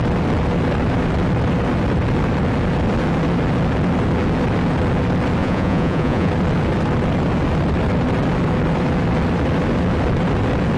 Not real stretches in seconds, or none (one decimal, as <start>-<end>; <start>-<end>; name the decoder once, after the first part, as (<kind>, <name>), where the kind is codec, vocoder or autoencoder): 5.4-6.3 (vocoder, Vocos)